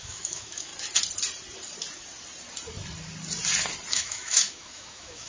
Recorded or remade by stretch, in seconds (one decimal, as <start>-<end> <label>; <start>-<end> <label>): 0.0-0.7 remade; 0.7-3.9 recorded; 3.9-5.3 remade